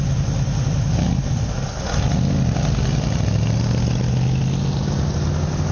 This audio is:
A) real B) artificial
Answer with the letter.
A